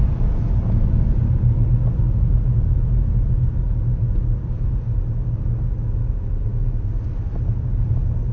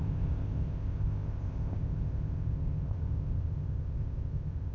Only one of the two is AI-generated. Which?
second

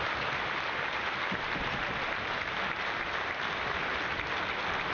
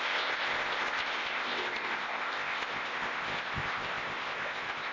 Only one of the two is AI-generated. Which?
second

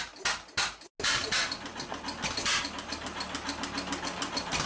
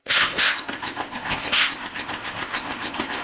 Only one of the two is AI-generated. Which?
second